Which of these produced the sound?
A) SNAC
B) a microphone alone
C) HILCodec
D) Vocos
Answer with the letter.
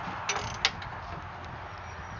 B